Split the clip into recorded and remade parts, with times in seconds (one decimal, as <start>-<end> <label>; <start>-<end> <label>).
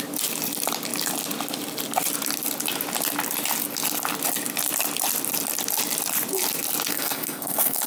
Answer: 0.0-6.9 recorded; 6.9-7.9 remade